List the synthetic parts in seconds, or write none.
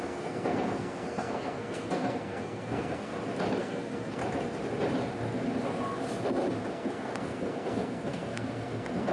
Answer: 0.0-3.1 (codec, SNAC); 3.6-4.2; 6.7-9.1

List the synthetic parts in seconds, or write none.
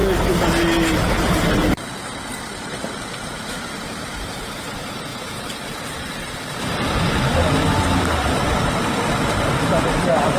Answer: 1.3-1.8 (vocoder, BigVGAN v2); 2.5-10.4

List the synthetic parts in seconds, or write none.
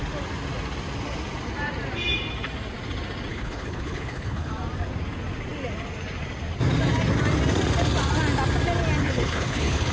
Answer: 3.3-4.5 (codec, HILCodec); 9.0-9.9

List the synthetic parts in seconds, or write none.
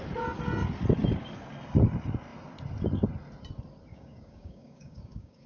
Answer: 3.9-5.5 (codec, DAC)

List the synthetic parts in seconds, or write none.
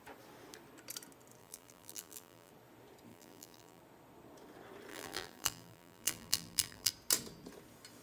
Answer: 1.4-2.5 (vocoder, BigVGAN v2); 3.1-3.8; 4.9-6.9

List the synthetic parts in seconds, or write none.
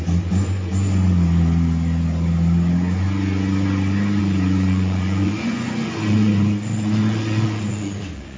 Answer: 4.2-8.4 (vocoder, Vocos)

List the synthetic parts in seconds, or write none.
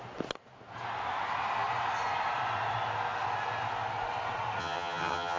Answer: 4.6-5.4 (vocoder, HiFi-GAN)